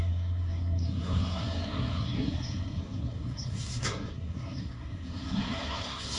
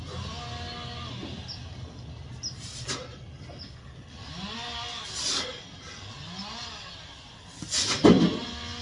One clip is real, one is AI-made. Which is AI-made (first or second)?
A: first